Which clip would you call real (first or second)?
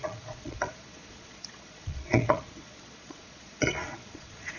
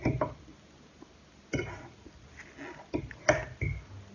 second